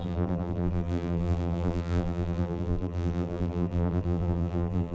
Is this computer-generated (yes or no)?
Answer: yes